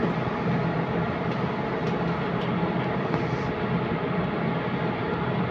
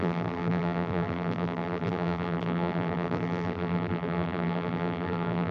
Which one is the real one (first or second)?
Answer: first